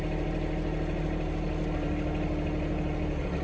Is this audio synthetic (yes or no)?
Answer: no